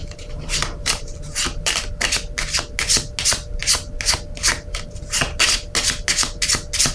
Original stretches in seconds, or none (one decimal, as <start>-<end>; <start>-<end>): 1.9-6.9